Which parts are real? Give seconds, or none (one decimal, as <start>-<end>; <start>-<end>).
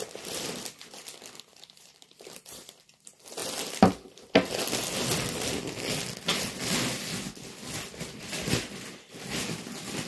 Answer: 0.0-1.5; 2.8-10.1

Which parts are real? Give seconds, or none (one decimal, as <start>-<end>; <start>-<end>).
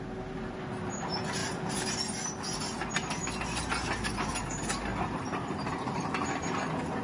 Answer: 0.0-1.4; 1.9-7.0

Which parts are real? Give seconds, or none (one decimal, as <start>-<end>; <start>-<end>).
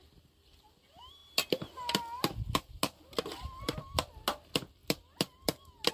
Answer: 0.0-5.9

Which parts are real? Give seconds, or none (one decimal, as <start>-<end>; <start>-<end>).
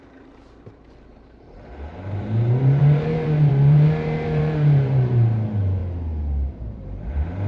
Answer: 5.8-6.5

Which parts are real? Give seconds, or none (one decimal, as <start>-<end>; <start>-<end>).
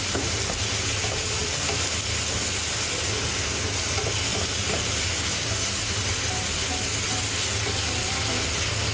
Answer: 0.0-8.9